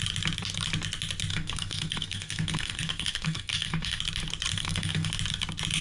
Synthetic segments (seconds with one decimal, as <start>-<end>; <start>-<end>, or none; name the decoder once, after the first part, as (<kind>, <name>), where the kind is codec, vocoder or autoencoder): 1.3-4.0 (codec, SNAC); 4.5-5.1